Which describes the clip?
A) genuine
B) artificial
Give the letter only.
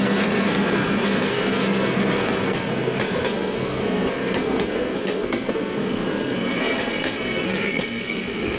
B